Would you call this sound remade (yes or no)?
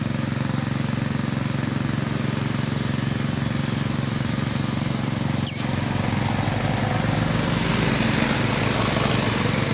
no